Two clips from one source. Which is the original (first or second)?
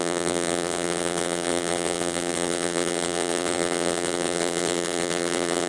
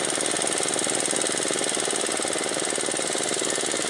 second